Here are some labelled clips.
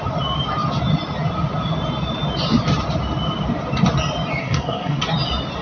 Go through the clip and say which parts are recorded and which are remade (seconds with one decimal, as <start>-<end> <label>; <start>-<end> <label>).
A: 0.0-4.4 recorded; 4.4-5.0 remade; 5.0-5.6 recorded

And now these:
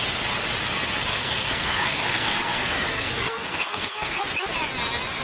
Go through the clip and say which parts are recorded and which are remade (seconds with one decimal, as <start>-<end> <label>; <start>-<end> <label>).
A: 0.0-1.1 recorded; 1.1-4.2 remade; 4.2-5.2 recorded

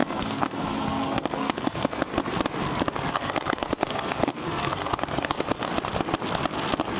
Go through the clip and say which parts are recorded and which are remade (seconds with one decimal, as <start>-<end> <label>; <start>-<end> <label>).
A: 0.0-2.1 remade; 2.1-3.1 recorded; 3.1-5.6 remade; 5.6-7.0 recorded